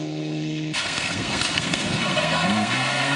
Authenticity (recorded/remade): remade